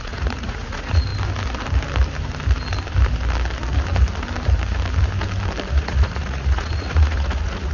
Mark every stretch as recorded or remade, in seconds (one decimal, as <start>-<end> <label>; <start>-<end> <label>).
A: 0.0-1.1 remade; 1.1-5.7 recorded; 5.7-7.7 remade